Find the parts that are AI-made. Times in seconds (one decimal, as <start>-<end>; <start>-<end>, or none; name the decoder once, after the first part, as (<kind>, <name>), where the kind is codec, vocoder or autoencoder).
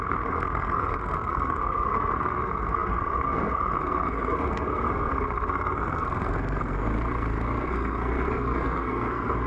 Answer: 0.0-9.5 (codec, SNAC)